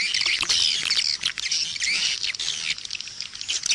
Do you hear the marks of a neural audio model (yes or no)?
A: no